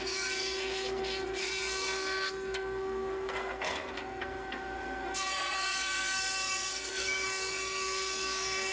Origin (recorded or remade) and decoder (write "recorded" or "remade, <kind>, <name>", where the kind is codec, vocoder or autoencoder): remade, codec, SNAC